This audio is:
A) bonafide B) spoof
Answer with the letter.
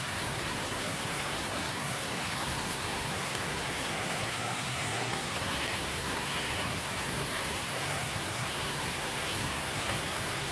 B